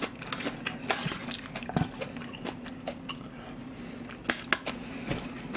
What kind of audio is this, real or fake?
real